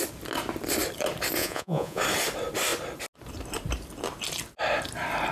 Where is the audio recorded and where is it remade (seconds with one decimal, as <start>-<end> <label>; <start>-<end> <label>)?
0.0-1.4 recorded; 1.4-2.0 remade; 2.0-5.3 recorded